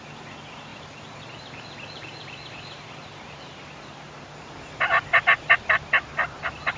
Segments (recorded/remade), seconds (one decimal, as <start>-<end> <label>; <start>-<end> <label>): 0.0-0.7 recorded; 0.7-4.3 remade; 4.3-6.8 recorded